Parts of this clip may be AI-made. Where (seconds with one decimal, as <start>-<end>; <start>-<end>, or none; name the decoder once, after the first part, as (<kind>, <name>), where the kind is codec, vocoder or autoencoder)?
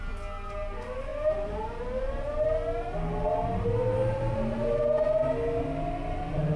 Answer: none